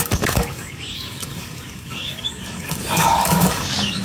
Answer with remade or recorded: remade